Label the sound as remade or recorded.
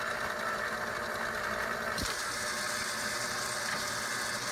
recorded